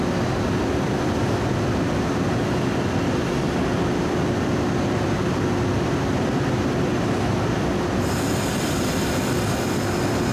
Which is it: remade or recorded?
recorded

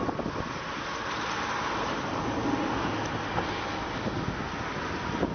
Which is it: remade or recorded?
recorded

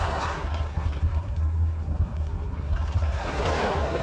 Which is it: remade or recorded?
remade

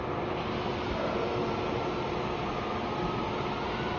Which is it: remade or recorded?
recorded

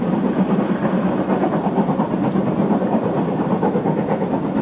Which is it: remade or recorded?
recorded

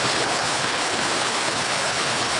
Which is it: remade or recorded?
remade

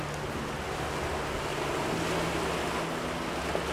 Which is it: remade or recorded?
recorded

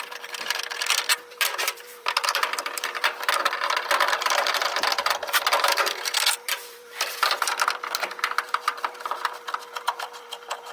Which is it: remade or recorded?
remade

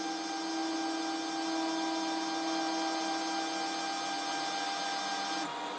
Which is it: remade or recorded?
recorded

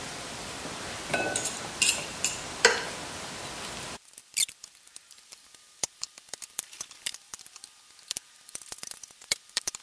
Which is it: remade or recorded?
remade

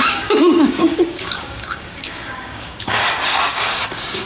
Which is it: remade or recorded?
remade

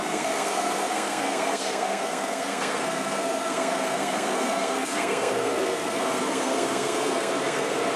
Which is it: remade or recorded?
remade